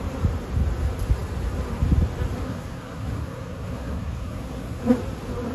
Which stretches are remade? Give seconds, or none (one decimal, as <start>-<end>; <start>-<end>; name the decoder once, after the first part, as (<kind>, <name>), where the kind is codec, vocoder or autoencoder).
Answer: 2.4-4.8 (codec, SNAC)